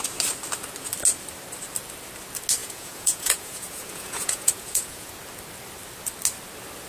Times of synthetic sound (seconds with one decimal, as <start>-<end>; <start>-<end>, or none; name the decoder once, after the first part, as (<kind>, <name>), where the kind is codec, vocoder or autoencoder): 2.6-5.1 (vocoder, Vocos)